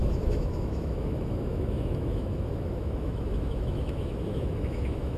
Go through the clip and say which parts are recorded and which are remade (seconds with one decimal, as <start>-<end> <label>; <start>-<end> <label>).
0.0-5.2 remade